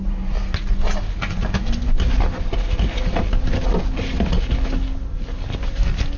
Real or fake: real